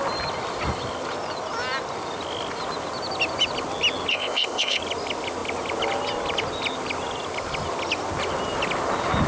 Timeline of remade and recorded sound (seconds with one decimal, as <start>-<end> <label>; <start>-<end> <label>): 0.0-4.1 recorded; 4.1-4.8 remade; 4.8-9.3 recorded